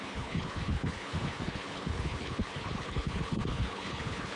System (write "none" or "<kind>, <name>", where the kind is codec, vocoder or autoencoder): codec, HILCodec